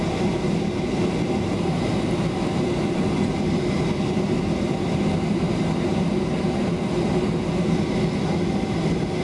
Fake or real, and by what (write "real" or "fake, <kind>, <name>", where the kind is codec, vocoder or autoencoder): real